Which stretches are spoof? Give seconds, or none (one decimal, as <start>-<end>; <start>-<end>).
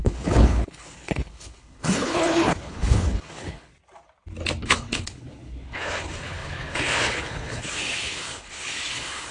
0.0-3.7; 4.6-9.3